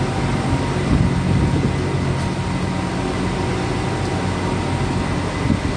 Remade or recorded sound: recorded